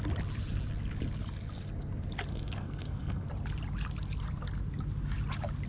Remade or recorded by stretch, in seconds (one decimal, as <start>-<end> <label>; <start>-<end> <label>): 0.0-2.3 recorded; 2.3-3.3 remade; 3.3-5.7 recorded